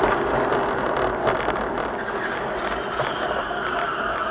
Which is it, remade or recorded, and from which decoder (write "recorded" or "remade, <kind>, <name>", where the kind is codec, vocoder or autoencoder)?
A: recorded